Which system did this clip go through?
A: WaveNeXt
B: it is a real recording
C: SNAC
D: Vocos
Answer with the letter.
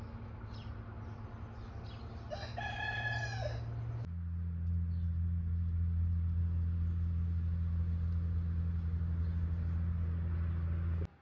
B